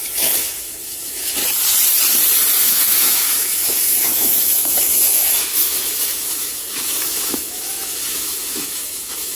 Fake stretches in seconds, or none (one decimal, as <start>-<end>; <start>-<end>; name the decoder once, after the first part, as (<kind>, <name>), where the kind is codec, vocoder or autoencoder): 0.0-1.4 (autoencoder, DAC-VAE); 2.6-9.4